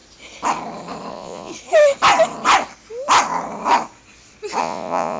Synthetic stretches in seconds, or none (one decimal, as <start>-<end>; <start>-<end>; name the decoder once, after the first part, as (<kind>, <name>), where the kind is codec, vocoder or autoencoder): 1.1-1.5 (vocoder, Vocos); 4.6-5.2